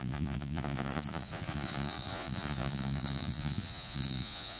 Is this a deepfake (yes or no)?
yes